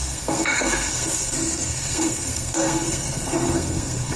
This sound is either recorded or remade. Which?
remade